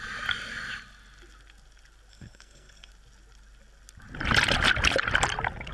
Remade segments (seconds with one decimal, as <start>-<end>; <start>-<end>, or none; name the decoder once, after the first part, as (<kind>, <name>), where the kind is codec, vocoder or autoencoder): 2.1-2.9 (codec, SNAC)